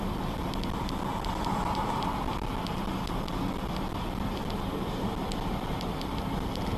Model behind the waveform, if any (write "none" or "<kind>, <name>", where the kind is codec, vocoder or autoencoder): none